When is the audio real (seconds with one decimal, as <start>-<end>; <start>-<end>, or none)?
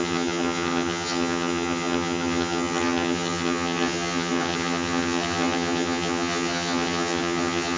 none